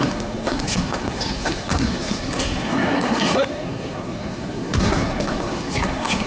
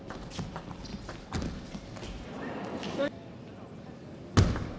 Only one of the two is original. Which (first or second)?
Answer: second